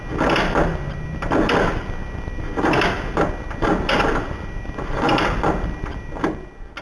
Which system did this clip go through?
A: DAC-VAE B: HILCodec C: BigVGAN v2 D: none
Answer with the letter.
D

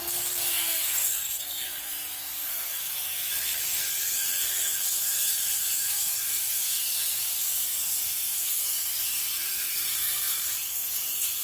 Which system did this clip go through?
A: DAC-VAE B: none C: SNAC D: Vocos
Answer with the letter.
C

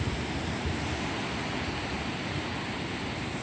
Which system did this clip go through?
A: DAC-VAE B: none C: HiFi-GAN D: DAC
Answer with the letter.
B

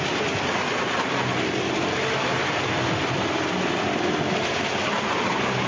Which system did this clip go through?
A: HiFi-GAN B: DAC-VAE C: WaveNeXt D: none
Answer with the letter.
D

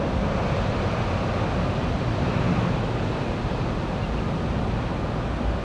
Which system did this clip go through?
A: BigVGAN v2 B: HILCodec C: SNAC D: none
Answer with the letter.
D